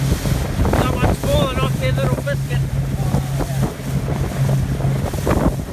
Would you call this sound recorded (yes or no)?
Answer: yes